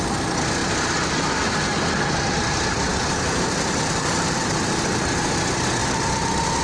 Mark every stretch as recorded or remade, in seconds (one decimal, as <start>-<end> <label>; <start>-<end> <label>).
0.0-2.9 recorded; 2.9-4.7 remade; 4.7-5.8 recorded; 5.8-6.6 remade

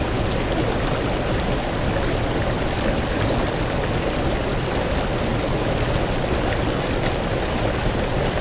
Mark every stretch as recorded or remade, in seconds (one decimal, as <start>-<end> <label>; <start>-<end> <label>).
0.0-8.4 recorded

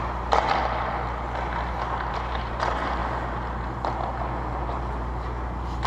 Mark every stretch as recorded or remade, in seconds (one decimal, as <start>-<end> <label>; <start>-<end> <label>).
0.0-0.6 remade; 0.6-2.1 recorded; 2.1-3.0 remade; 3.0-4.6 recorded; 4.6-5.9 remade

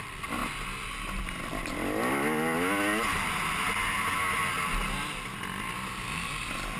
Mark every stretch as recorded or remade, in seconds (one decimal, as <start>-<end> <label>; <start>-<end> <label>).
0.0-6.8 recorded

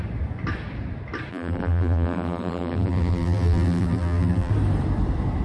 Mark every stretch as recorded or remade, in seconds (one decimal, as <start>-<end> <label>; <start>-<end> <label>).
0.0-1.3 recorded; 1.3-4.5 remade; 4.5-5.4 recorded